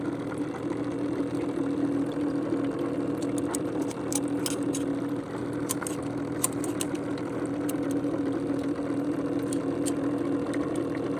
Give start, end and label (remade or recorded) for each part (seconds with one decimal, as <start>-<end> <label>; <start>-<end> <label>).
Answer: 0.0-11.2 recorded